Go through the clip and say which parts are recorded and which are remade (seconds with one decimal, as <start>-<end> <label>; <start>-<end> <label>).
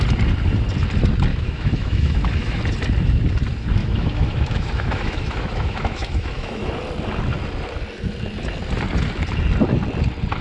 0.0-1.3 recorded; 1.3-2.6 remade; 2.6-3.8 recorded; 3.8-6.7 remade; 6.7-10.4 recorded